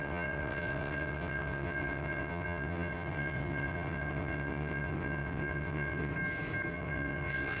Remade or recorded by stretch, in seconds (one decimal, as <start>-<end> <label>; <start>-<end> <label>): 0.0-6.1 remade; 6.1-6.7 recorded; 6.7-7.6 remade